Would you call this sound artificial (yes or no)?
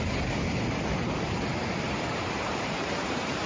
yes